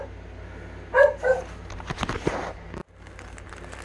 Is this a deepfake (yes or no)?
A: no